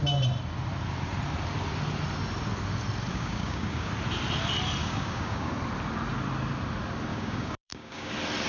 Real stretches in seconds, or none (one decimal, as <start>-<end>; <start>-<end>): 0.0-3.1; 3.9-4.8; 5.5-7.1; 8.1-8.5